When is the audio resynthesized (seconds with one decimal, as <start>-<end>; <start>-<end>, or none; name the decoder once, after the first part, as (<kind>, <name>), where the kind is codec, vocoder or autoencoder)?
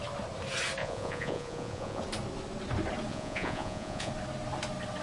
0.8-2.0 (vocoder, Vocos); 3.1-4.1